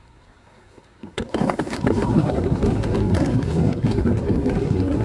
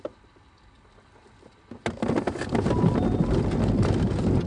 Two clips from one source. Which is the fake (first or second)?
first